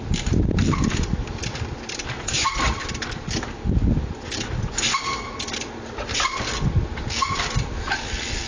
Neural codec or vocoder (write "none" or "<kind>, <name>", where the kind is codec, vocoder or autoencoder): none